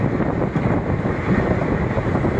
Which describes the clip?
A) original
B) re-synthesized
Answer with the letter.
A